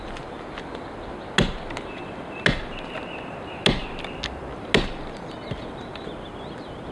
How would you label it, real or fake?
real